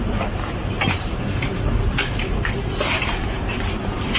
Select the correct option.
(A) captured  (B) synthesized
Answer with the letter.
B